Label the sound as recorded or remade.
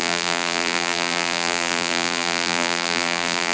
remade